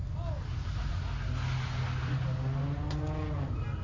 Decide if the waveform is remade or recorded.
recorded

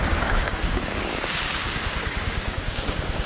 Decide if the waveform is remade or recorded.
remade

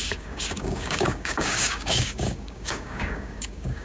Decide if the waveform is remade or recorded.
remade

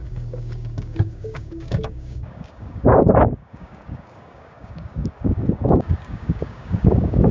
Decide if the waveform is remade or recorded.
remade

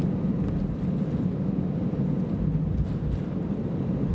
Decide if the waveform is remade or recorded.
recorded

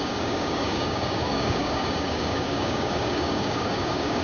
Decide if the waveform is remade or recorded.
remade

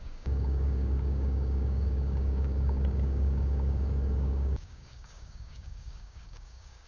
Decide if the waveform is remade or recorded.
remade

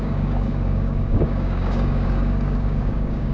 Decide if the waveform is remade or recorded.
remade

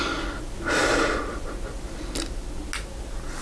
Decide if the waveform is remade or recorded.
recorded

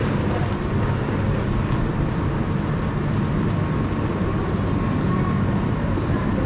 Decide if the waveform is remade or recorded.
recorded